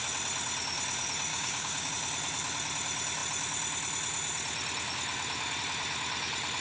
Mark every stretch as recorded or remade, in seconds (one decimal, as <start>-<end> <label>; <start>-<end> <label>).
0.0-1.3 recorded; 1.3-1.9 remade; 1.9-6.6 recorded